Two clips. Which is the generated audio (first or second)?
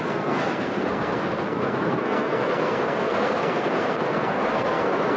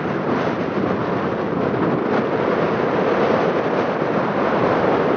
first